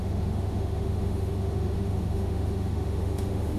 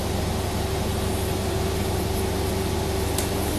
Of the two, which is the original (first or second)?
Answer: second